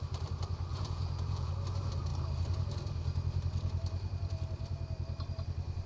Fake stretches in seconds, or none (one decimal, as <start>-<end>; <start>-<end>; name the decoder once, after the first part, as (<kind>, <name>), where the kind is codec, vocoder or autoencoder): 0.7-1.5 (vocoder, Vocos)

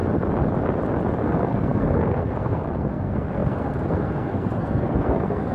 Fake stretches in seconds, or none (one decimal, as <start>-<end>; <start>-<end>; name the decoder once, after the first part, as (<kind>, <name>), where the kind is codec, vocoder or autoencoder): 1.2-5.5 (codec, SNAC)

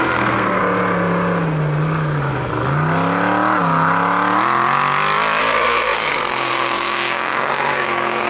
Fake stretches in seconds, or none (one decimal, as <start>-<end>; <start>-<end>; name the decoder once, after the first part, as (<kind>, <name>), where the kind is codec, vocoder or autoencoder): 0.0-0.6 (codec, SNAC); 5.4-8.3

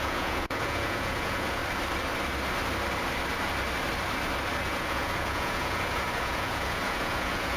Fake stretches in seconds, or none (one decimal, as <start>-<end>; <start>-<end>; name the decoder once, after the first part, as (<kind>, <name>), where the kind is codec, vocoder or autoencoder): 0.0-1.6 (vocoder, Vocos); 4.6-7.6

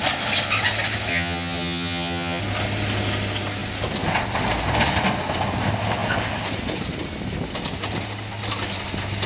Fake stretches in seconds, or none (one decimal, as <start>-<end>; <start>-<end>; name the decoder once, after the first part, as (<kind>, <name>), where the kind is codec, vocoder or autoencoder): 1.1-2.4 (vocoder, HiFi-GAN)

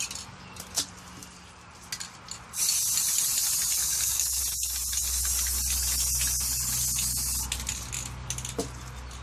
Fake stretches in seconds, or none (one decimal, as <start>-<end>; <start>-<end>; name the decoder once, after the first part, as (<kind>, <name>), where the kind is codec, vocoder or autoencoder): 3.8-4.4 (codec, DAC)